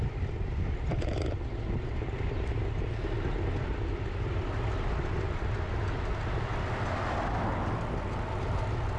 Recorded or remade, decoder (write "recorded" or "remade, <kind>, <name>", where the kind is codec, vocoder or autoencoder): recorded